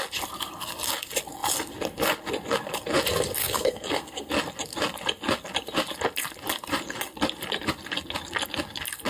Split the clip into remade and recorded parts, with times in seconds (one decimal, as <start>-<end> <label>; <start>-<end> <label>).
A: 0.0-3.4 recorded; 3.4-4.3 remade; 4.3-9.1 recorded